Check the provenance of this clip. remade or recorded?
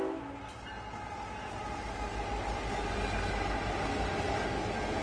recorded